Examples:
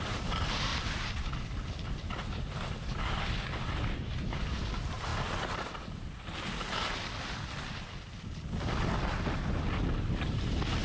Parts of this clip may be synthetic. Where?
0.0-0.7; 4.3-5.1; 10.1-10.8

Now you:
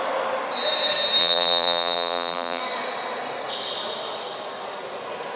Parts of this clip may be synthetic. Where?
1.2-2.6

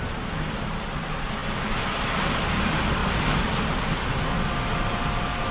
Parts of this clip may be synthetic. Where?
3.0-3.6; 4.7-5.5

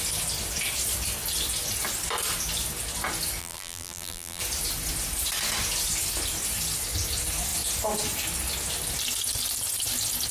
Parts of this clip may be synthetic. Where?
3.4-4.4

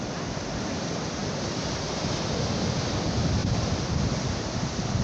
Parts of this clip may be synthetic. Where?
3.4-4.0

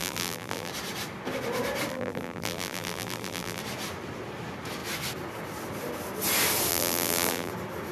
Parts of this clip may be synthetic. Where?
0.0-0.7; 1.9-3.6; 6.7-7.5

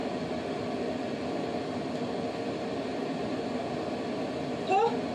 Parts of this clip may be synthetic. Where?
2.9-3.5

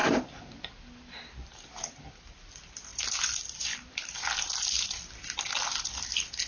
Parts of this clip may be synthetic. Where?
0.0-0.6